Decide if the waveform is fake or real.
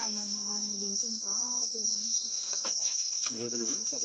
fake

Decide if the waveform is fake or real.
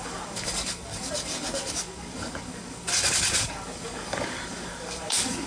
fake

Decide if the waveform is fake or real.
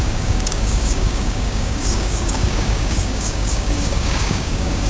fake